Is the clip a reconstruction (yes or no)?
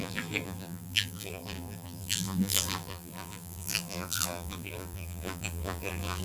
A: yes